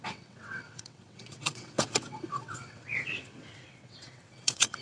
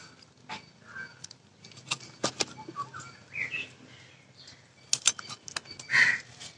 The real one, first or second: second